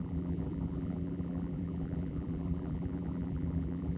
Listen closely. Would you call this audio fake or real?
fake